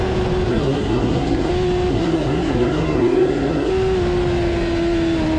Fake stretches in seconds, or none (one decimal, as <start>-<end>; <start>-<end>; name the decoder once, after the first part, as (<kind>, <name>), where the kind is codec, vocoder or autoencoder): 0.5-1.5 (codec, SNAC); 1.9-3.7

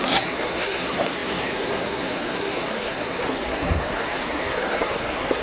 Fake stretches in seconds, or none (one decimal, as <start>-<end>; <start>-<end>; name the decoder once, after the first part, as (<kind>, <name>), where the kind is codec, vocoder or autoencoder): 0.0-5.4 (codec, SNAC)

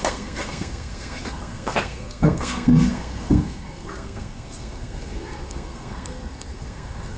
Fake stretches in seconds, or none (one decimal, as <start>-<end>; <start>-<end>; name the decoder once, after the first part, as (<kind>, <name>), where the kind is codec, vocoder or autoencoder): 0.0-7.2 (codec, SNAC)

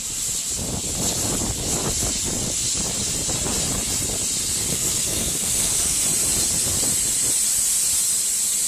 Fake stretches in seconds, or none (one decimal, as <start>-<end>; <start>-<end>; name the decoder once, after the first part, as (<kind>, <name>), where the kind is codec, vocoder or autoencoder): 4.7-6.0 (codec, SNAC)

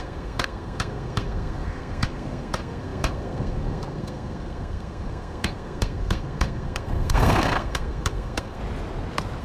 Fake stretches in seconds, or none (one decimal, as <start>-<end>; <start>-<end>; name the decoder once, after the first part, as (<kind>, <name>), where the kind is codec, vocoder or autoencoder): 0.0-8.6 (codec, SNAC)

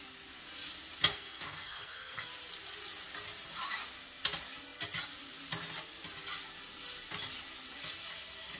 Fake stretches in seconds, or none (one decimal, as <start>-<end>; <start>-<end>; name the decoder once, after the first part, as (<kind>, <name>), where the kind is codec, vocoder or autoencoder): 1.1-2.3 (codec, SNAC)

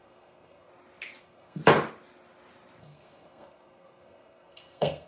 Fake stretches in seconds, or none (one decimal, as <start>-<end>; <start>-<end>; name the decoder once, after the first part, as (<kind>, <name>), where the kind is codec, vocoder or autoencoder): 0.0-0.7 (codec, SNAC); 1.2-1.6; 2.8-5.1